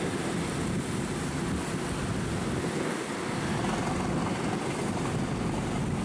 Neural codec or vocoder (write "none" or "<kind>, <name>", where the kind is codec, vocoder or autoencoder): none